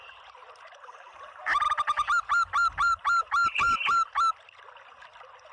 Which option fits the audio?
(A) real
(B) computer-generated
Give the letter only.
A